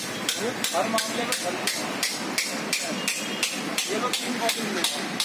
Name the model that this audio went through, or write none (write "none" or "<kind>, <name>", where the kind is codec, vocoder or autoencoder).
vocoder, BigVGAN v2